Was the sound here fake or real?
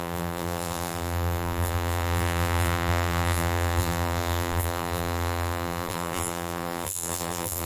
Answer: fake